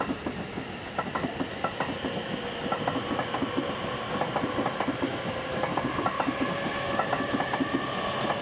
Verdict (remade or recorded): recorded